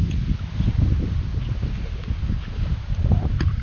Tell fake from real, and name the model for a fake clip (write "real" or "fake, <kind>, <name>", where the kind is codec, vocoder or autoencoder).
real